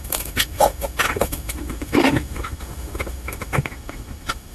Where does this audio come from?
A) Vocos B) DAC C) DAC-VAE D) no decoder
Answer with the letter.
C